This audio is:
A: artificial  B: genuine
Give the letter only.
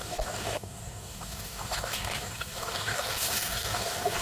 A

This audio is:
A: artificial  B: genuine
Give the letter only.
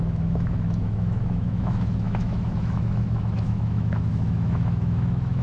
A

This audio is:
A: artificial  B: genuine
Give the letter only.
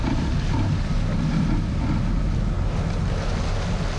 B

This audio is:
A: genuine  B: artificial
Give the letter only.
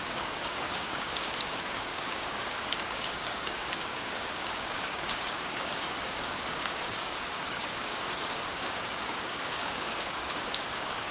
B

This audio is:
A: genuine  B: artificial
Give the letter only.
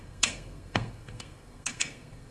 B